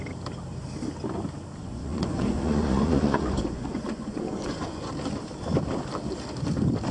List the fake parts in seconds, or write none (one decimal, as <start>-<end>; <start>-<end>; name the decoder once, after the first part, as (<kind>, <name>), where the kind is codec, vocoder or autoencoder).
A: 1.6-4.9 (vocoder, Vocos)